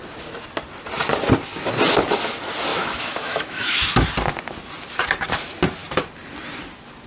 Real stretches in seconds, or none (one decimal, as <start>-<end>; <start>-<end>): 0.0-2.7; 3.9-7.1